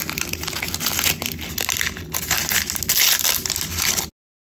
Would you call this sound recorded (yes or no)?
yes